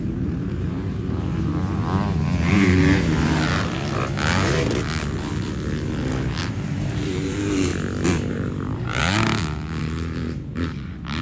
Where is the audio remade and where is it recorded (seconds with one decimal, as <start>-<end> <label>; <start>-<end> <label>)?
0.0-1.5 remade; 1.5-6.4 recorded; 6.4-7.7 remade; 7.7-8.3 recorded; 8.3-9.0 remade; 9.0-9.8 recorded; 9.8-11.2 remade